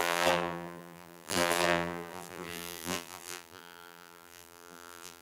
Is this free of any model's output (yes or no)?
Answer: no